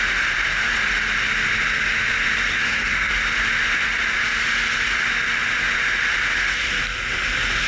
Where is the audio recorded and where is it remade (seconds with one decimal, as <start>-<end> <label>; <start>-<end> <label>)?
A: 0.0-2.5 recorded; 2.5-3.1 remade; 3.1-7.7 recorded